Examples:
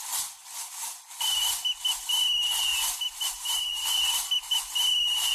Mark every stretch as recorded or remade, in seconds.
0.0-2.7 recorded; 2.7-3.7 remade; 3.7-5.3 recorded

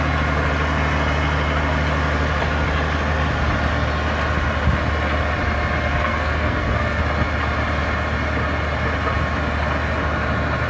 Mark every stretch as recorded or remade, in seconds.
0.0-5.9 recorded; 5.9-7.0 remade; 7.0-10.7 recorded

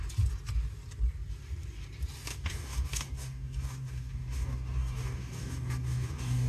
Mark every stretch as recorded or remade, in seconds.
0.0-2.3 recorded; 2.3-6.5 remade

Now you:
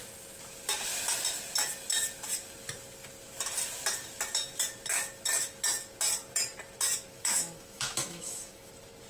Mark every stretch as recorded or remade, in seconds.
0.0-7.1 recorded; 7.1-8.7 remade; 8.7-9.1 recorded